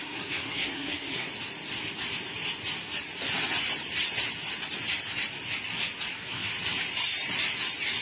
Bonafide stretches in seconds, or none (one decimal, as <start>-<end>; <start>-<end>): 1.3-6.1; 6.5-8.0